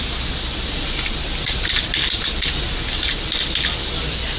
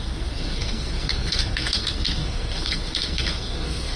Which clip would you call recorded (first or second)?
first